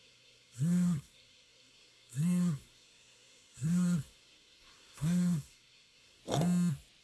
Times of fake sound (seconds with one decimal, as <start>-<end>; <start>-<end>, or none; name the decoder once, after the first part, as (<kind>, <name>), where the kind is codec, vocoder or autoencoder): 0.0-6.2 (codec, SNAC)